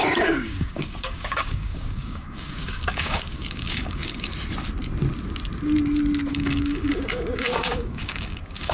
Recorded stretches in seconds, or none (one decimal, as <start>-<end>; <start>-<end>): 4.3-6.3